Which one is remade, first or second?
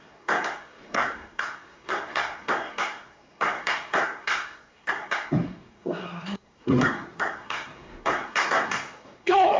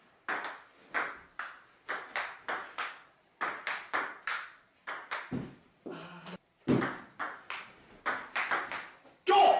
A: first